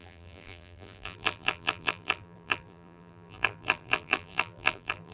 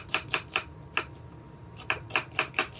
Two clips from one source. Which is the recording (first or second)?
second